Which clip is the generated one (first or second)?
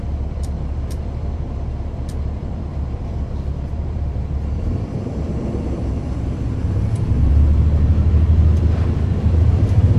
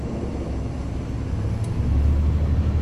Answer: first